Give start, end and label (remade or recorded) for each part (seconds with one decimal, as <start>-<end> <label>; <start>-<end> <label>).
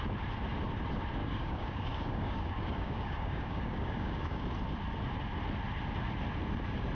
0.0-1.2 recorded; 1.2-4.4 remade; 4.4-6.9 recorded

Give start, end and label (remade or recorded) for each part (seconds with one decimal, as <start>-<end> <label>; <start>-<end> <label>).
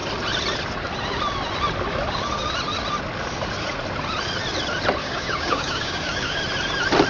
0.0-5.0 recorded; 5.0-6.4 remade; 6.4-7.1 recorded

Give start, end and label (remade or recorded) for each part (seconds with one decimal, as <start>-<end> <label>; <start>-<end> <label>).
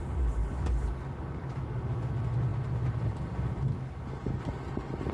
0.0-0.4 recorded; 0.4-2.1 remade; 2.1-3.7 recorded; 3.7-4.4 remade; 4.4-5.1 recorded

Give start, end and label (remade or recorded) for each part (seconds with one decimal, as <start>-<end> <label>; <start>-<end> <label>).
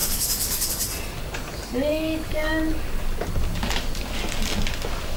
0.0-0.7 remade; 0.7-1.9 recorded; 1.9-2.5 remade; 2.5-5.2 recorded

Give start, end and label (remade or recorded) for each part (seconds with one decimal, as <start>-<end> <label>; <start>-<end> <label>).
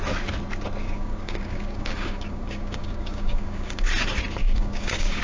0.0-0.8 recorded; 0.8-3.9 remade; 3.9-4.4 recorded; 4.4-5.2 remade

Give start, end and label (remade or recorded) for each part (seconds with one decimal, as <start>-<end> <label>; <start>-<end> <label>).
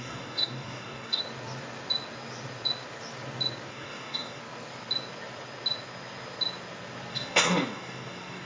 0.0-1.2 remade; 1.2-3.7 recorded; 3.7-4.4 remade; 4.4-7.1 recorded; 7.1-8.5 remade